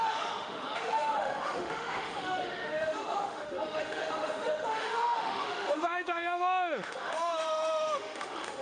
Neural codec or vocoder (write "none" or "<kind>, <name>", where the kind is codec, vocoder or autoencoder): autoencoder, DAC-VAE